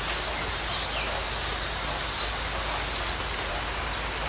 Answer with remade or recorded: recorded